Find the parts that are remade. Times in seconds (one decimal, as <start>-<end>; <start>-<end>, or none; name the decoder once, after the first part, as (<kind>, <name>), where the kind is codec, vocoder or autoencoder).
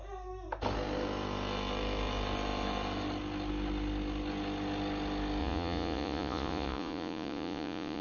5.4-8.0 (vocoder, Vocos)